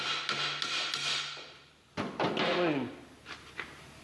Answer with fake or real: real